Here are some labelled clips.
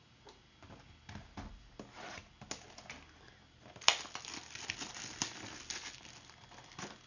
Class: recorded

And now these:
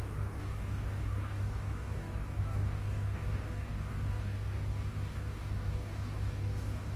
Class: remade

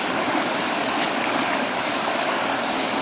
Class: remade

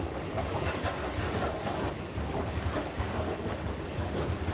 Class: remade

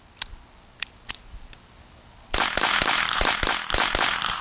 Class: recorded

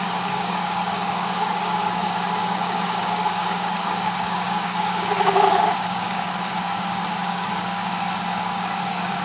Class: remade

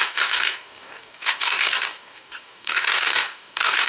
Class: remade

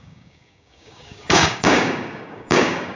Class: remade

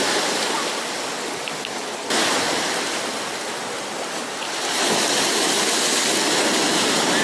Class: recorded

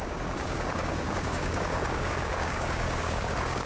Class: remade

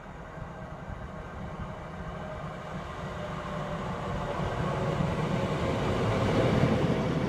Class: recorded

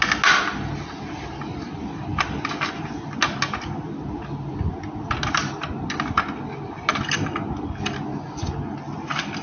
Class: recorded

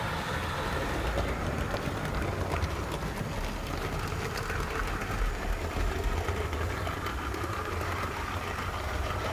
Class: recorded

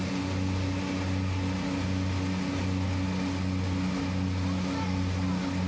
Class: recorded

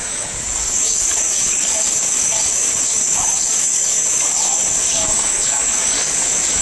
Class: remade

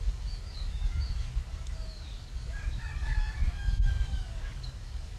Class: remade